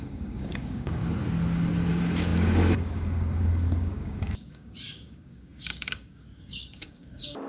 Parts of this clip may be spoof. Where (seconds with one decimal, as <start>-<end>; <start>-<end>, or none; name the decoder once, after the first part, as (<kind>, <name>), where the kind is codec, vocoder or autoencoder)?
0.0-1.0 (codec, DAC); 1.9-7.5